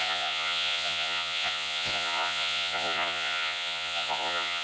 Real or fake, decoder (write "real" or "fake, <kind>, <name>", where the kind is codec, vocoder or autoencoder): fake, vocoder, Vocos